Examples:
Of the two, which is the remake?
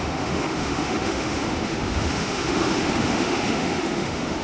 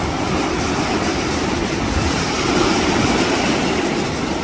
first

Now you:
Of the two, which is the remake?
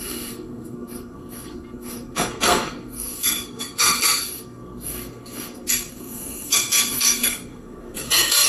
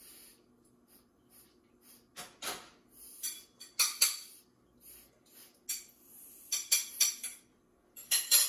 first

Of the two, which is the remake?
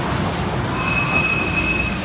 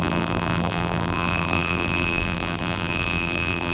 second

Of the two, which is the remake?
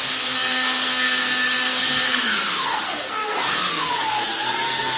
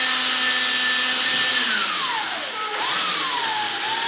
first